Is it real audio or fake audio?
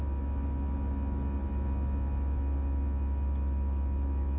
real